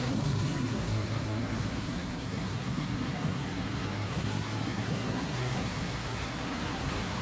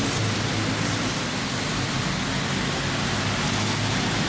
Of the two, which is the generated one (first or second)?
first